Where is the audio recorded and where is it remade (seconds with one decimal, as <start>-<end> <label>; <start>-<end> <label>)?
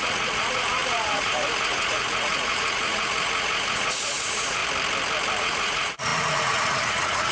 0.0-4.6 remade; 4.6-5.4 recorded; 5.4-7.3 remade